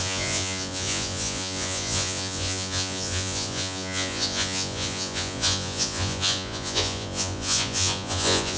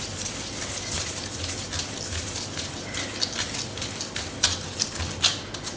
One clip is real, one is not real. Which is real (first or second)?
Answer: second